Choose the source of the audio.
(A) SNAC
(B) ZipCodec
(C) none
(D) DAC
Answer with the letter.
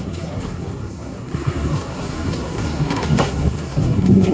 A